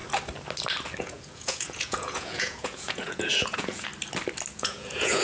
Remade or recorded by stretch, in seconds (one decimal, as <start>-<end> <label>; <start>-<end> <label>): 0.0-1.0 recorded; 1.0-3.9 remade; 3.9-4.5 recorded; 4.5-5.2 remade